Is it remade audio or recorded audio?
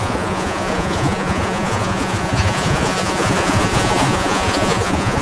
remade